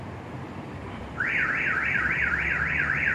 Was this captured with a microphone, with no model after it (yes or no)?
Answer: no